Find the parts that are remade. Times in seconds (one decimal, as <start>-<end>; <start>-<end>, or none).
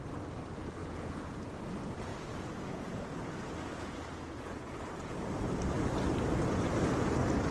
0.8-1.6; 2.1-5.3